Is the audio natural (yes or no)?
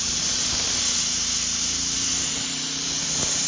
yes